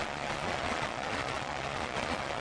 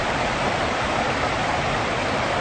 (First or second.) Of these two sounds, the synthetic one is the first